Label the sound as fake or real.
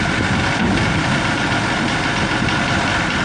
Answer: real